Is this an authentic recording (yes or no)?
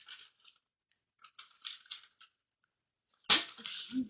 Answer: yes